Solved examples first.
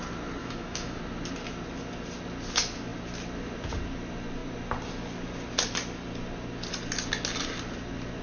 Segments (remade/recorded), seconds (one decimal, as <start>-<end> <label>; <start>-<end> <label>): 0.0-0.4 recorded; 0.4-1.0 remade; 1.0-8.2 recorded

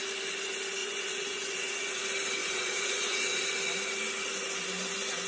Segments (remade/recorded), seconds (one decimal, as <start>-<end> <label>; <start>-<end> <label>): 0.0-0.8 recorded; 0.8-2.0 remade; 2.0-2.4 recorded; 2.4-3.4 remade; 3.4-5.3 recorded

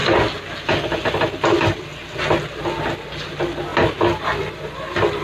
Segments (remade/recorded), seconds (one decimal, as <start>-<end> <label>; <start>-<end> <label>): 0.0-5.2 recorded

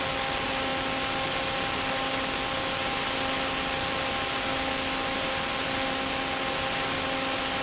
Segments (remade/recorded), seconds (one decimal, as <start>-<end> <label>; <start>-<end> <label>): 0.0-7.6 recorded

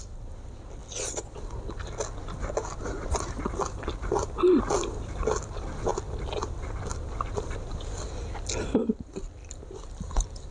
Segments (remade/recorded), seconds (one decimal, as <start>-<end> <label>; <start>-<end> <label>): 0.0-0.8 recorded; 0.8-1.4 remade; 1.4-9.4 recorded; 9.4-10.5 remade

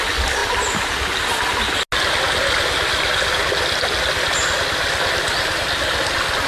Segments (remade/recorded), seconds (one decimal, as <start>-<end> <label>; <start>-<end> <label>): 0.0-6.5 recorded

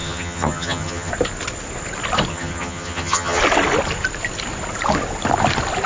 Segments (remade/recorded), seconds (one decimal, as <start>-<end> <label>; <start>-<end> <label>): 0.0-1.1 remade; 1.1-2.3 recorded; 2.3-3.4 remade; 3.4-5.9 recorded

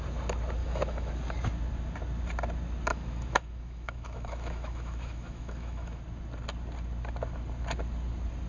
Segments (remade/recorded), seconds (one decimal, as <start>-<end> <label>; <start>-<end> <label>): 0.0-0.6 recorded; 0.6-1.1 remade; 1.1-2.9 recorded; 2.9-6.0 remade; 6.0-8.5 recorded